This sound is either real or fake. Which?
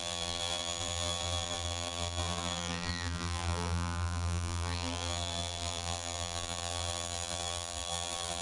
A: fake